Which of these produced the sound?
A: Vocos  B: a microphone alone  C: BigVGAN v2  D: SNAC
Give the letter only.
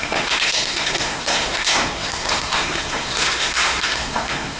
D